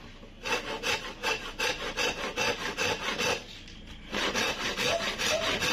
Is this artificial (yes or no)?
no